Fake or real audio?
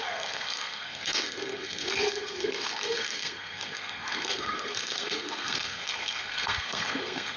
fake